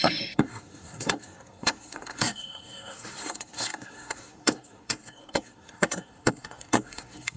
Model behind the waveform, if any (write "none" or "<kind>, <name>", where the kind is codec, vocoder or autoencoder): codec, SNAC